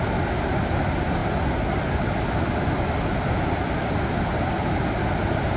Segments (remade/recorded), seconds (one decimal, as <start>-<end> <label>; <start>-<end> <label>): 0.0-5.6 recorded